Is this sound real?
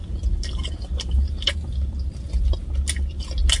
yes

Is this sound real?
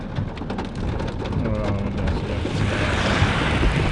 yes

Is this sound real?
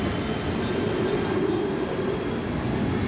yes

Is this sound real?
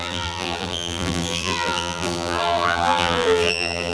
no